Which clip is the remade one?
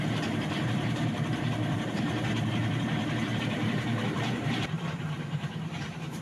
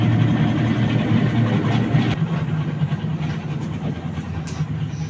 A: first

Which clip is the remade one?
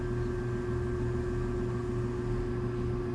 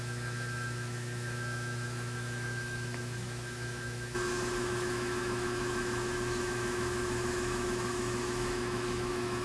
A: second